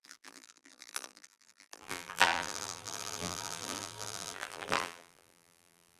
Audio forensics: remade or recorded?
remade